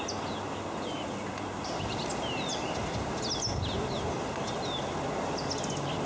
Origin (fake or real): real